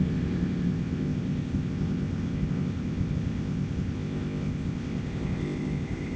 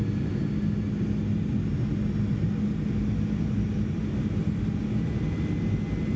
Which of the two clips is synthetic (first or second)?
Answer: first